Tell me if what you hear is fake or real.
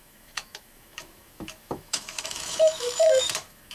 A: fake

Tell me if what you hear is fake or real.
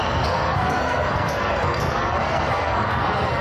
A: fake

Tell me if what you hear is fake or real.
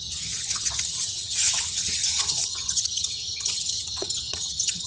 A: fake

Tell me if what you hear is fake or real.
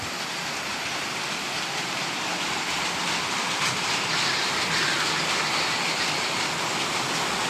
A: real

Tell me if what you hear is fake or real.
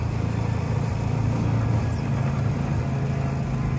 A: real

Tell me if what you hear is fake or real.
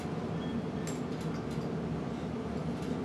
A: real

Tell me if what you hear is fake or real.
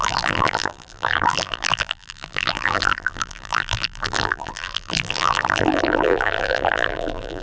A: fake